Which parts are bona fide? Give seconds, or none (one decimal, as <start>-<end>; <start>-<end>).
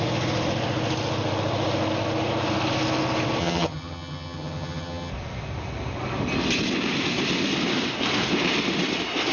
0.0-3.4; 5.1-9.3